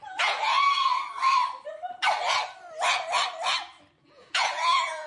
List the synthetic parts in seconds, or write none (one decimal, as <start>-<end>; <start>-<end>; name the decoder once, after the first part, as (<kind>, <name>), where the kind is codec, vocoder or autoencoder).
0.0-0.9 (vocoder, Vocos); 4.0-5.1

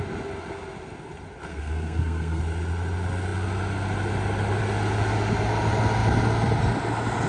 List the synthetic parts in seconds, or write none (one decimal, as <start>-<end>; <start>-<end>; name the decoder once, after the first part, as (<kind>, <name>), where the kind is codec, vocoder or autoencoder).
1.5-2.4 (codec, SNAC)